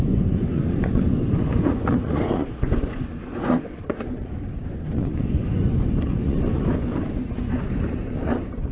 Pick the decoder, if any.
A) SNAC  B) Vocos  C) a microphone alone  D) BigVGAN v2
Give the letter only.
B